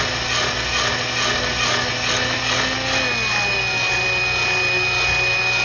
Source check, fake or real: real